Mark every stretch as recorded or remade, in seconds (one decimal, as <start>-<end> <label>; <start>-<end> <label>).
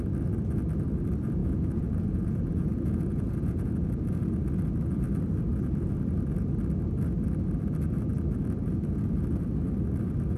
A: 0.0-1.4 recorded; 1.4-4.2 remade; 4.2-10.4 recorded